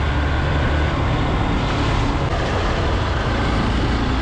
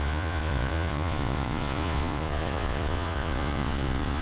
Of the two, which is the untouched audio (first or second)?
first